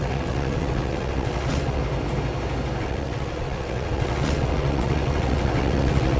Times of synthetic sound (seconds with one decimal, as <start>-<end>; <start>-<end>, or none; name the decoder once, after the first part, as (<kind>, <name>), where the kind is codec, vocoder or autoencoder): 0.0-1.8 (vocoder, WaveNeXt); 2.8-6.2